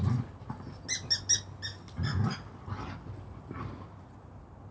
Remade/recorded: recorded